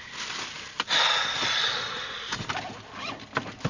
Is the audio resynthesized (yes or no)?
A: no